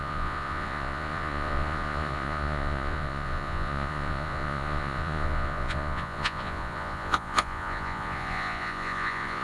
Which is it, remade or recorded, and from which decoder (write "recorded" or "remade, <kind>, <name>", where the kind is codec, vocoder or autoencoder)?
remade, vocoder, Vocos